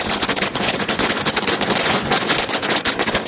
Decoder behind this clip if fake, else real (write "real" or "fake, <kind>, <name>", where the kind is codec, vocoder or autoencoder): fake, vocoder, Vocos